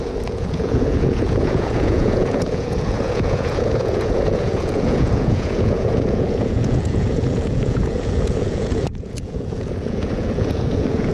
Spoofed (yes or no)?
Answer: yes